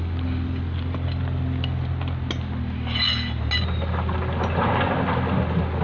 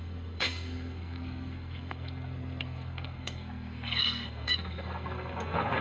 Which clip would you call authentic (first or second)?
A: first